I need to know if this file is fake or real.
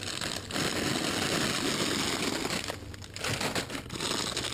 real